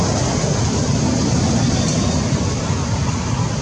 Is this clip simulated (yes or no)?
no